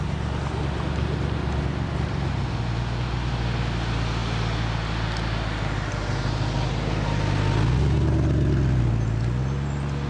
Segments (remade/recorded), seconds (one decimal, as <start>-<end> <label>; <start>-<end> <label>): 0.0-10.1 recorded